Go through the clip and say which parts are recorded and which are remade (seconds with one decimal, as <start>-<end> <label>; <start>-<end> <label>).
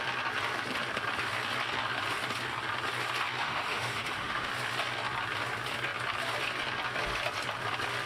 0.0-3.4 recorded; 3.4-4.5 remade; 4.5-8.1 recorded